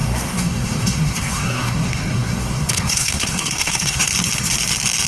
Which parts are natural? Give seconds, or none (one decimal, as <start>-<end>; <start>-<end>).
4.1-5.1